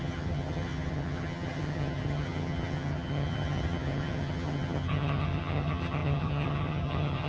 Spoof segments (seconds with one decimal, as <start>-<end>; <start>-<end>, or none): 0.0-7.3